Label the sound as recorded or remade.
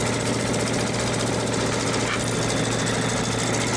recorded